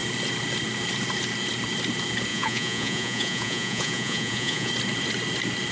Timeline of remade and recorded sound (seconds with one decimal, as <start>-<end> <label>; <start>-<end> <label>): 0.0-2.3 recorded; 2.3-4.7 remade; 4.7-5.7 recorded